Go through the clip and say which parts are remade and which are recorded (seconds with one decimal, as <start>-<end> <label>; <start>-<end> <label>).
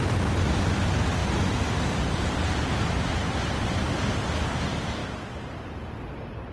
0.0-6.5 recorded